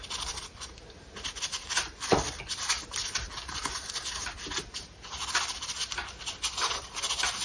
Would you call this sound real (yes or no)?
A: yes